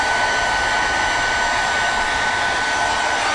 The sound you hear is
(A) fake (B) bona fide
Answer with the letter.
B